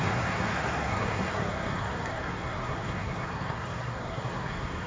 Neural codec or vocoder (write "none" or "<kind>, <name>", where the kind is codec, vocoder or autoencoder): codec, SNAC